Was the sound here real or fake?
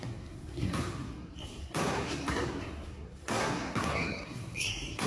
fake